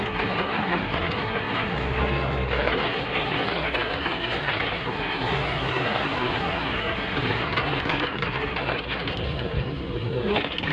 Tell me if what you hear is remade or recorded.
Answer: remade